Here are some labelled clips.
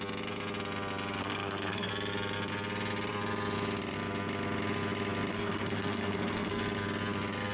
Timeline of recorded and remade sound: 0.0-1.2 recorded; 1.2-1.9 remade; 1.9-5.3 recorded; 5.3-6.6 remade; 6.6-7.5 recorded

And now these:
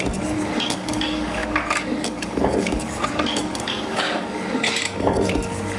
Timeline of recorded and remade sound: 0.0-5.8 remade

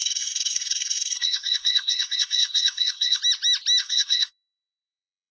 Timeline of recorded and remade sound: 0.0-3.2 remade; 3.2-3.8 recorded; 3.8-5.3 remade

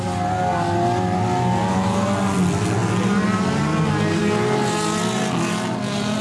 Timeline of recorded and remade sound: 0.0-6.2 recorded

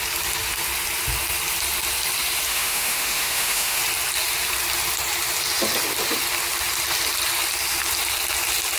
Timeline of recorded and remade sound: 0.0-2.5 recorded; 2.5-3.8 remade; 3.8-8.8 recorded